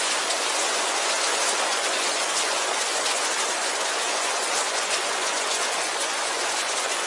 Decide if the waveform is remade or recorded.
remade